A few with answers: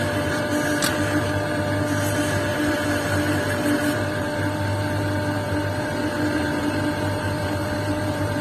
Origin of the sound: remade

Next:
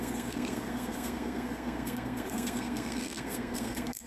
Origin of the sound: remade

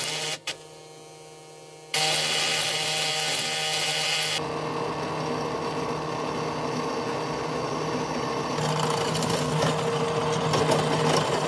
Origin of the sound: recorded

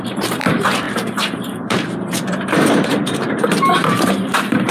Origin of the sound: remade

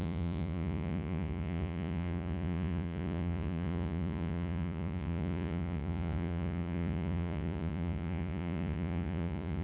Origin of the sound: remade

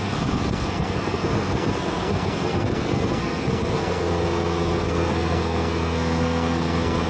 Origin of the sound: remade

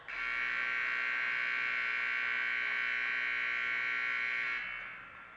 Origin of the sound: recorded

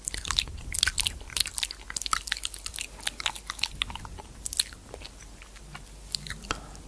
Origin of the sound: recorded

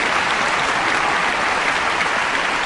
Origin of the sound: recorded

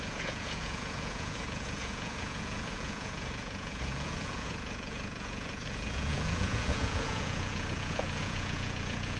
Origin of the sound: remade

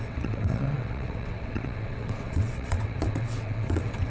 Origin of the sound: remade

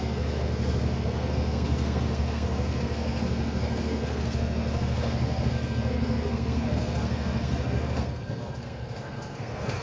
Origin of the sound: remade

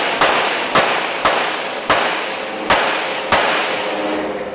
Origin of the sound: recorded